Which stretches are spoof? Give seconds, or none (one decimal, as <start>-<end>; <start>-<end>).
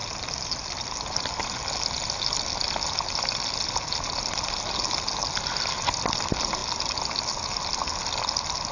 none